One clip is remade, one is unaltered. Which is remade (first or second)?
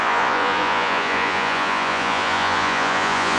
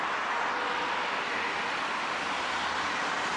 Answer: first